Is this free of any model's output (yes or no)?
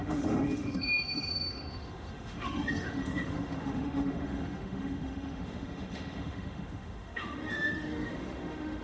no